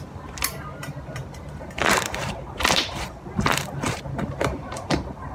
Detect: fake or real fake